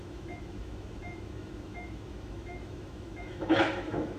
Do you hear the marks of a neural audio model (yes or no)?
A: yes